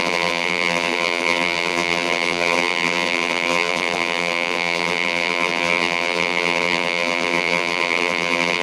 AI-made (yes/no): yes